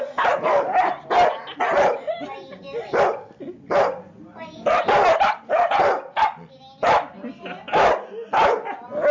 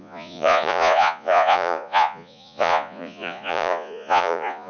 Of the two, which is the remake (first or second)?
second